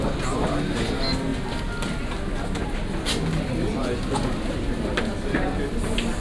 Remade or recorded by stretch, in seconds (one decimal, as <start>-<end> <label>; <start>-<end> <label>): 0.0-6.2 recorded